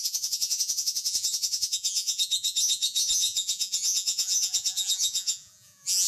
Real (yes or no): no